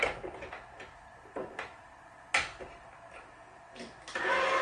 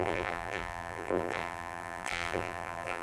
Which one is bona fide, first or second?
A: first